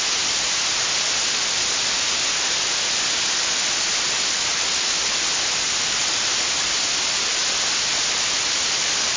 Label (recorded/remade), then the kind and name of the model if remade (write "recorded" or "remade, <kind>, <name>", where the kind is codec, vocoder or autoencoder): recorded